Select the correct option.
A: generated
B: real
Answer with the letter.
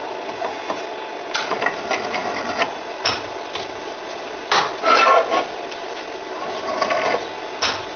B